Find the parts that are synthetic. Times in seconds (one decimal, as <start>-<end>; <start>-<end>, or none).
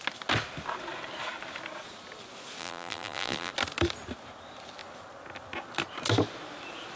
2.6-3.5